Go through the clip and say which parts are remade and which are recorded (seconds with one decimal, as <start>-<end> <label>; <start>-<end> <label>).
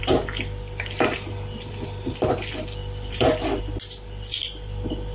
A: 0.0-5.1 recorded